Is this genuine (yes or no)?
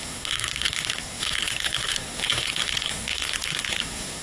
no